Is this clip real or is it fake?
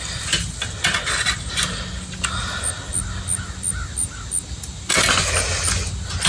real